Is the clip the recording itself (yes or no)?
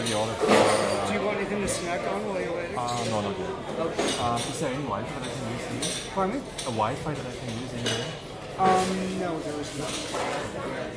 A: yes